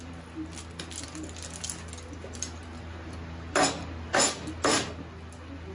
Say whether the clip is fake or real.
real